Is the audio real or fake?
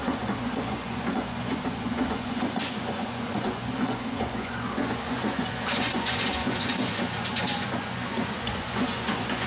fake